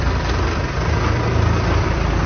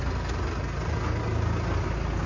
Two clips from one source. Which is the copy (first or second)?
first